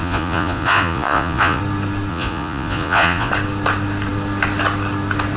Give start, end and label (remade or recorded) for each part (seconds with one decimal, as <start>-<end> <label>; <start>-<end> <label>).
0.0-1.6 remade; 1.6-2.1 recorded; 2.1-3.3 remade; 3.3-5.4 recorded